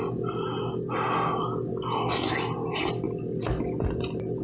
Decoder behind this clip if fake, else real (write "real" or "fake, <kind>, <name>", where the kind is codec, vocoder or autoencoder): real